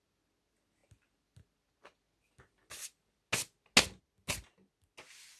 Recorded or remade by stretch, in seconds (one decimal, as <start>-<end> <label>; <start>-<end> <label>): 0.0-5.4 recorded